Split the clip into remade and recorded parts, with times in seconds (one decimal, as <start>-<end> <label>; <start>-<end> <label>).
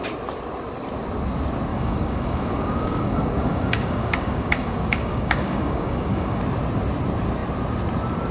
0.0-1.7 recorded; 1.7-6.4 remade; 6.4-8.3 recorded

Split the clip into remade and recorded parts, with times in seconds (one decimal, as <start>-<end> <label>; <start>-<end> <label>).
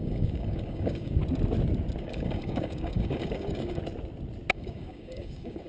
0.0-1.2 remade; 1.2-2.0 recorded; 2.0-3.8 remade; 3.8-4.5 recorded; 4.5-5.7 remade